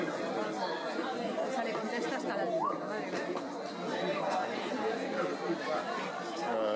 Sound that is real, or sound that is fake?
real